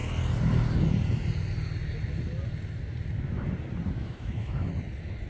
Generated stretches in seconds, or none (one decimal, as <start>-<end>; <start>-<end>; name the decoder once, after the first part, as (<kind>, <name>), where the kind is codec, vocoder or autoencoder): 4.0-4.7 (autoencoder, DAC-VAE)